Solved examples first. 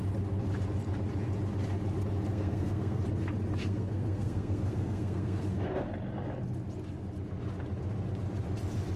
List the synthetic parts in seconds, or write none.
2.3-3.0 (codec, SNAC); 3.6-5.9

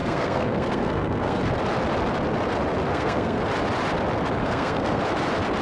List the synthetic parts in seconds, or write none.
0.0-1.4 (codec, SNAC); 2.9-3.4; 4.4-5.0